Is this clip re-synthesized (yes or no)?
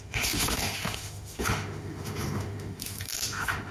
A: yes